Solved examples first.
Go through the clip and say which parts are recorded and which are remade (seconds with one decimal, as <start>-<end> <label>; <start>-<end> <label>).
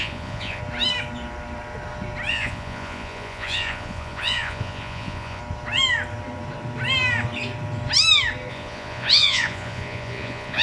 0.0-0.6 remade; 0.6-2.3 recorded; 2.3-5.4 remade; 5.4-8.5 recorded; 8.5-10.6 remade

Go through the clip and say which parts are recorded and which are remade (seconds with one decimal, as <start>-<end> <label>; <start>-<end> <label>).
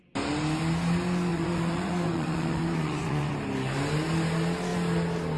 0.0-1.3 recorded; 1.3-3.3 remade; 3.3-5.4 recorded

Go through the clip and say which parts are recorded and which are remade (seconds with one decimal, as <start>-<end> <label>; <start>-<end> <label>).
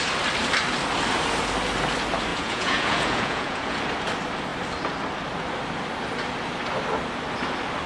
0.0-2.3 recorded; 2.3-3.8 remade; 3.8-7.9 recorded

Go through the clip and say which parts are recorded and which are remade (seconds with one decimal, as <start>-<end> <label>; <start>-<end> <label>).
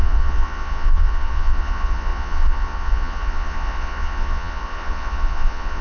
0.0-5.8 remade